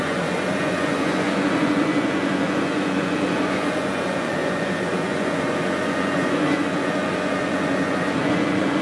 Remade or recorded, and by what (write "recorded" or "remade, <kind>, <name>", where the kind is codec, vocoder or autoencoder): remade, vocoder, Vocos